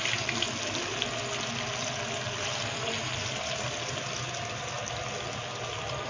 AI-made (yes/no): no